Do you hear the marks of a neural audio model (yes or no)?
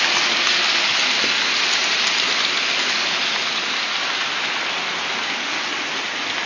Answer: no